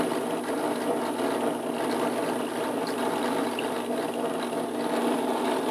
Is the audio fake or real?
real